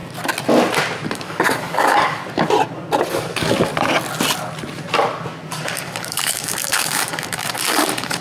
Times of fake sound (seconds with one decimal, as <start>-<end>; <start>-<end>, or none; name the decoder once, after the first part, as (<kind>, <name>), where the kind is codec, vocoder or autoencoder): 1.1-2.2 (codec, DAC); 3.1-3.7; 5.5-8.2